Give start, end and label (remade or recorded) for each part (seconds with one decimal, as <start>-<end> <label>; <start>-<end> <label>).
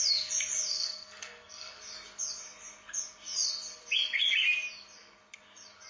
0.0-0.7 recorded; 0.7-1.8 remade; 1.8-5.9 recorded